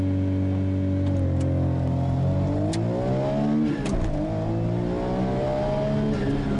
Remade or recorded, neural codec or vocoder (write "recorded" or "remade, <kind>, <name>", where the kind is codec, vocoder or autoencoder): recorded